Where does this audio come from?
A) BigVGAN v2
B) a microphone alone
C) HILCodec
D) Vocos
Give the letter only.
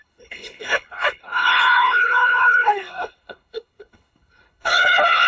C